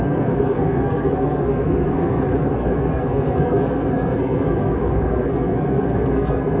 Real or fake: fake